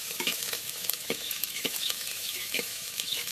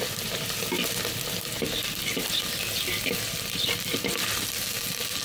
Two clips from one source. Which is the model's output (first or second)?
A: first